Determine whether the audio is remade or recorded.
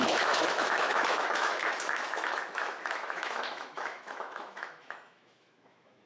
remade